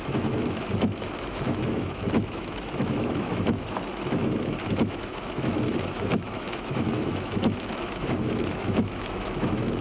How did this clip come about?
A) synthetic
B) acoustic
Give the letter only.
A